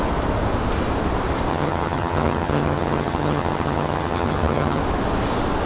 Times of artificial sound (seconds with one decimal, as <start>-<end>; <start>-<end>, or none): 1.5-4.8